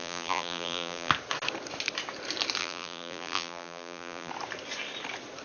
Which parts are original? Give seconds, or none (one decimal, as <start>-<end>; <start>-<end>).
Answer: 1.1-2.6; 4.3-5.4